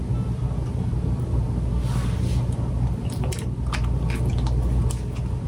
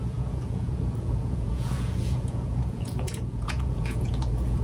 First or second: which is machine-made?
second